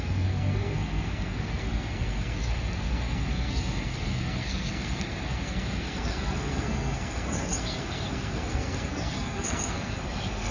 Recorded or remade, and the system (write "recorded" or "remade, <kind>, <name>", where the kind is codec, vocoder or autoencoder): remade, codec, SNAC